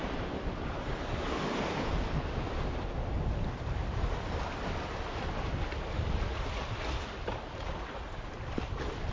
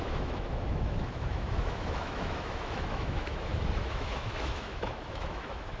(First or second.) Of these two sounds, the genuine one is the first